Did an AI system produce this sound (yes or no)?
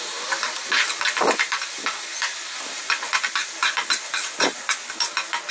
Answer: no